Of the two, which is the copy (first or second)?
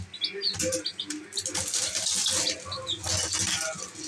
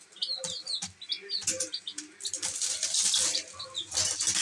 second